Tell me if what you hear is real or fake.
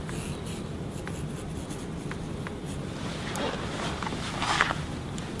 real